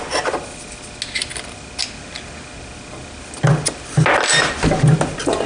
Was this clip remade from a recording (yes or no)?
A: no